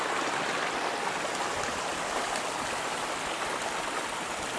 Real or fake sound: real